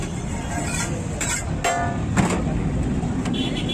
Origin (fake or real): real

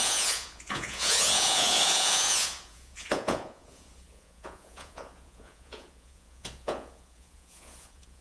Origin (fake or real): fake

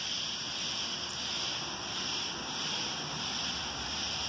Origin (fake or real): real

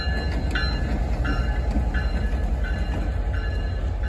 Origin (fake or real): real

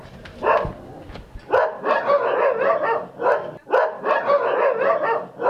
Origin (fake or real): real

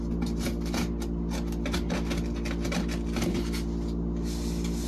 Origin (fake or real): real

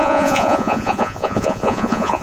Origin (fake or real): fake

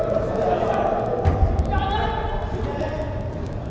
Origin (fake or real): real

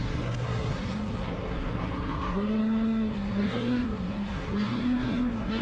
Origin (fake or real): fake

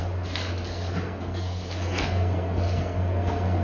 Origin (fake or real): fake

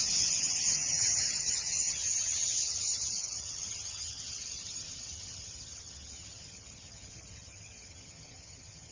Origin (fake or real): fake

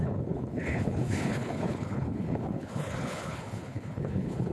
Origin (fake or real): fake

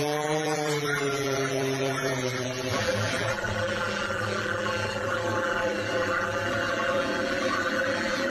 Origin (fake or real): fake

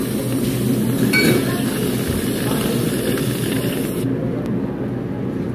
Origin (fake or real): real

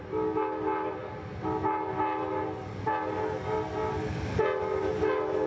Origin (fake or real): real